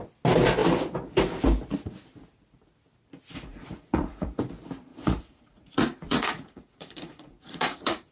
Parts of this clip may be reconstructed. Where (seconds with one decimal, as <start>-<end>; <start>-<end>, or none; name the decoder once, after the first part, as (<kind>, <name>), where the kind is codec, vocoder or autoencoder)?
3.5-4.4 (vocoder, Vocos); 4.9-8.1